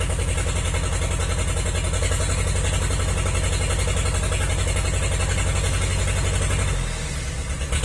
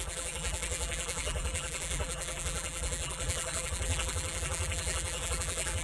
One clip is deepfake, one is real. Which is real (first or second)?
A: first